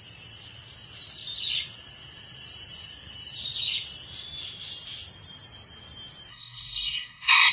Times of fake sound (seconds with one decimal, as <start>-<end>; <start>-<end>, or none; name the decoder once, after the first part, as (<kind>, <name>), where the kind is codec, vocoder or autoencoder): 6.3-7.5 (codec, SNAC)